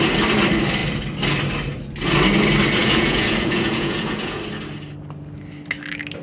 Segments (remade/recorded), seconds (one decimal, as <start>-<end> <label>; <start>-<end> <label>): 0.0-2.8 recorded; 2.8-4.4 remade; 4.4-6.2 recorded